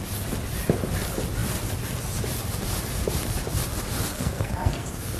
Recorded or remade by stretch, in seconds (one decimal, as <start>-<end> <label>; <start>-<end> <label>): 0.0-4.1 recorded; 4.1-5.2 remade